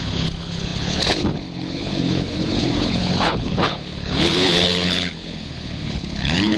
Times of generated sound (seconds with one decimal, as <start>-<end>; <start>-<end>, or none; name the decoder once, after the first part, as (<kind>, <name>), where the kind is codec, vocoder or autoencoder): 0.0-6.6 (codec, HILCodec)